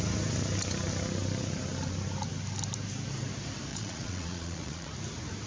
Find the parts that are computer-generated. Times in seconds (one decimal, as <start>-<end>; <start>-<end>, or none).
3.7-4.9